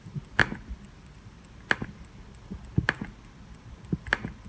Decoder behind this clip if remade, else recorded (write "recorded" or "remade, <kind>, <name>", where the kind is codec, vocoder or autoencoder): recorded